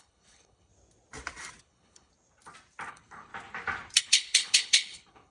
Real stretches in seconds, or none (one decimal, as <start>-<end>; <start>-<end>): 0.7-1.6; 2.1-2.9; 3.3-4.0